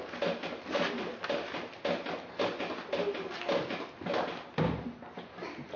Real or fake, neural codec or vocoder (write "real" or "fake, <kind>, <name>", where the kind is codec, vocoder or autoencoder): real